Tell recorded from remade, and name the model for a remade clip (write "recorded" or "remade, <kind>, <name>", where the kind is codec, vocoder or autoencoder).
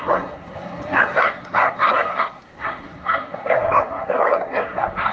remade, codec, SNAC